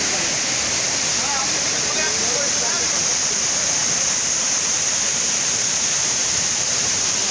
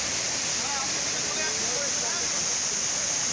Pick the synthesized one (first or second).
first